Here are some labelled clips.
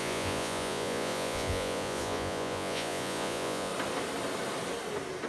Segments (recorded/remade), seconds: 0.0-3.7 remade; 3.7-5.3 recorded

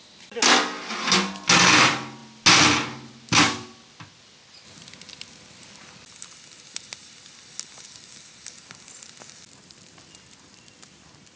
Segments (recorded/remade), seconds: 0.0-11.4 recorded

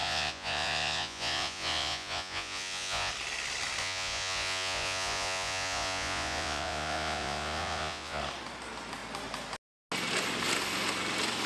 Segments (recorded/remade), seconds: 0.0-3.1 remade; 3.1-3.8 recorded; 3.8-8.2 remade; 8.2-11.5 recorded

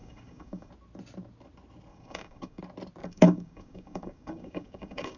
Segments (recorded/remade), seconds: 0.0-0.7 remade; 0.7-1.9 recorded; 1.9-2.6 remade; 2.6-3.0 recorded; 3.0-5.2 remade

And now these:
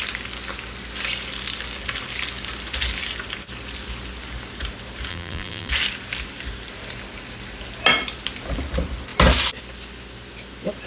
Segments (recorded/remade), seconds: 0.0-5.1 recorded; 5.1-5.7 remade; 5.7-10.9 recorded

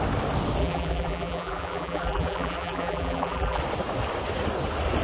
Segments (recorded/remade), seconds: 0.0-0.6 recorded; 0.6-3.6 remade; 3.6-5.0 recorded

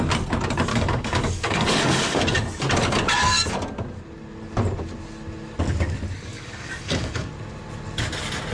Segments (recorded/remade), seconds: 0.0-0.7 recorded; 0.7-2.2 remade; 2.2-6.3 recorded; 6.3-7.3 remade; 7.3-8.5 recorded

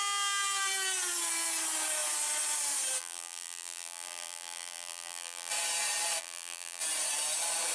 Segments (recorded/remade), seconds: 0.0-3.0 recorded; 3.0-5.5 remade; 5.5-6.2 recorded; 6.2-6.8 remade; 6.8-7.7 recorded